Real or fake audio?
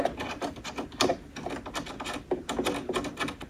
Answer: real